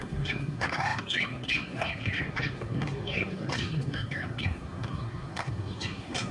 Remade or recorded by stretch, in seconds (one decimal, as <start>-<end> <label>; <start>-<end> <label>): 0.0-6.3 remade